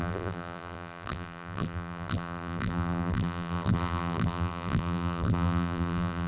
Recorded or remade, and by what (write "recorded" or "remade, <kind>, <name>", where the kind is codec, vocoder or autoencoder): remade, vocoder, BigVGAN v2